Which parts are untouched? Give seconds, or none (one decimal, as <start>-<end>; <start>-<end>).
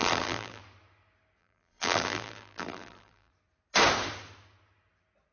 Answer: 0.6-1.4; 3.3-5.3